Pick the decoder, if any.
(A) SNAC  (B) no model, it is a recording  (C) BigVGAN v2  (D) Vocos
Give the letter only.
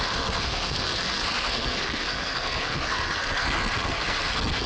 A